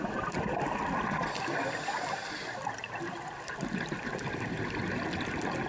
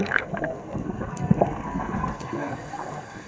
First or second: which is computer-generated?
second